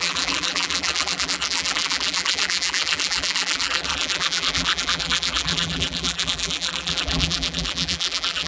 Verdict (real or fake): fake